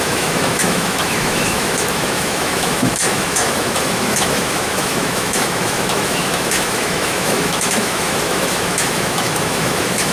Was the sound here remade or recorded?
remade